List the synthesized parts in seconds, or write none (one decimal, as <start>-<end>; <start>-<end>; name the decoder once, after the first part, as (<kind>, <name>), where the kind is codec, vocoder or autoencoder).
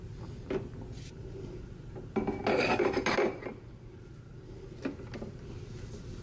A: none